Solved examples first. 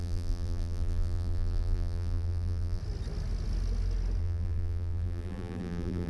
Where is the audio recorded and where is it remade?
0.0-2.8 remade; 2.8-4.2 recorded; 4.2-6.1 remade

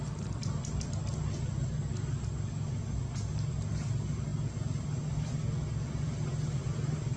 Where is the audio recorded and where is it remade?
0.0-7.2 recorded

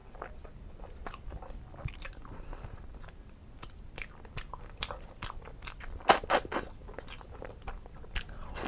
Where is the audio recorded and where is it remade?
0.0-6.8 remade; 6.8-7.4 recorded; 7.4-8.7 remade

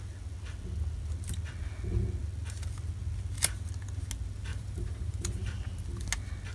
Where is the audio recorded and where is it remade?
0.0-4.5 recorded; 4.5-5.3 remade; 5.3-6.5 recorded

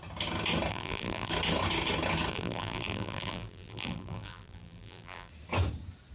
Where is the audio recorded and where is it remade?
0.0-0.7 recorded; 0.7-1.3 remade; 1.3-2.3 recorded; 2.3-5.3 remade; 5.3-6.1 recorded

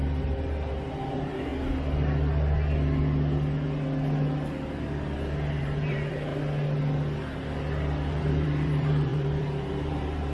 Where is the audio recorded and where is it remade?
0.0-1.5 remade; 1.5-5.6 recorded; 5.6-6.3 remade; 6.3-8.1 recorded; 8.1-10.3 remade